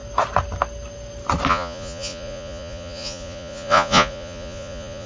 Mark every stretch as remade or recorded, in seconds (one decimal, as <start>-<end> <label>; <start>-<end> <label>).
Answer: 0.0-1.5 recorded; 1.5-5.1 remade